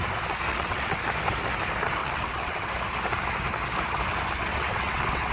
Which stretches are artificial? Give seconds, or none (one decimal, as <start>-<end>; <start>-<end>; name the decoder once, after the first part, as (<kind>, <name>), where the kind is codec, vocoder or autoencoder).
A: 0.5-1.0 (vocoder, WaveNeXt); 2.0-2.7; 4.5-5.3